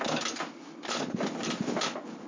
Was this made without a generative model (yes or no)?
yes